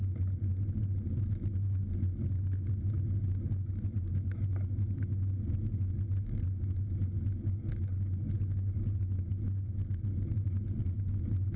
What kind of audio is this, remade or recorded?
recorded